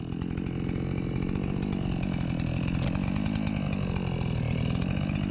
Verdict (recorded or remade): recorded